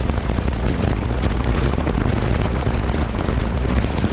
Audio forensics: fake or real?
fake